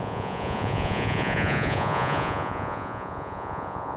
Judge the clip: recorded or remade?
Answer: remade